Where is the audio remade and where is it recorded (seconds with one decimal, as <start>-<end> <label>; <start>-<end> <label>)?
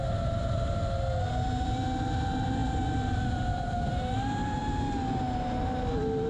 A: 0.0-0.8 remade; 0.8-1.3 recorded; 1.3-4.6 remade; 4.6-6.3 recorded